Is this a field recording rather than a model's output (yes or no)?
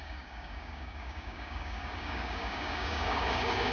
no